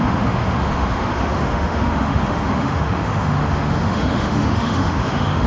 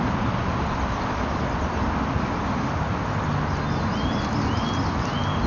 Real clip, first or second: second